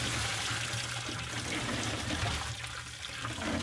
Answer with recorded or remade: recorded